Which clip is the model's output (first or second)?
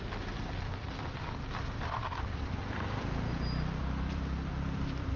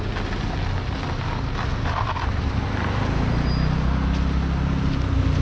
first